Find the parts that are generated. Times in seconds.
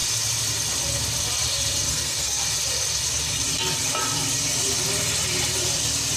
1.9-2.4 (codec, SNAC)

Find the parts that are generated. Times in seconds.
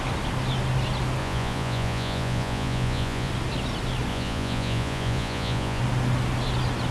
1.2-3.3 (vocoder, Vocos); 4.1-5.8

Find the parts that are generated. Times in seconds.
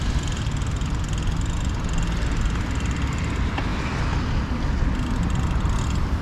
3.7-4.2 (vocoder, BigVGAN v2)